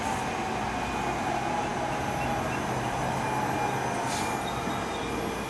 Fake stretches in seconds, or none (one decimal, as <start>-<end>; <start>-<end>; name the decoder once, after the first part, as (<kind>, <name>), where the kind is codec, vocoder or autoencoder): none